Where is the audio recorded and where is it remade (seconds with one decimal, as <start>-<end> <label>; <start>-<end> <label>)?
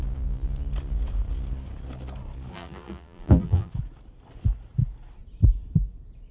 0.0-2.5 recorded; 2.5-3.7 remade; 3.7-6.3 recorded